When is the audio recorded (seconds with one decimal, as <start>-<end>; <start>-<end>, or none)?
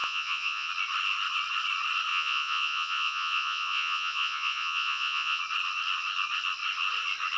0.7-2.1; 5.4-7.4